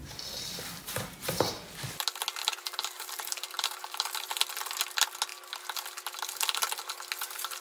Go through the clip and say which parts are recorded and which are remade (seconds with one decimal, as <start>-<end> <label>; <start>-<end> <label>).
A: 0.0-1.5 remade; 1.5-2.4 recorded; 2.4-4.4 remade; 4.4-7.6 recorded